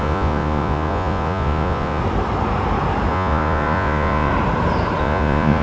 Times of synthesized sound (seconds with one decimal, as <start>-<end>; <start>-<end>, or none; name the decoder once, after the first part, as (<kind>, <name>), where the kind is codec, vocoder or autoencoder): 0.0-2.0 (vocoder, Vocos); 3.1-4.3; 5.0-5.6